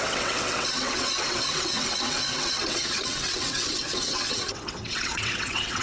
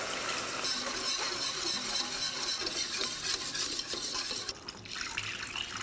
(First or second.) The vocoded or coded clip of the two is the first